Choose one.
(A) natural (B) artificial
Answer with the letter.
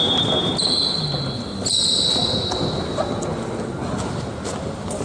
A